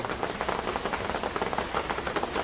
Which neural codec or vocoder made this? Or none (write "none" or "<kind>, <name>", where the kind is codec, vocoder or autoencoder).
none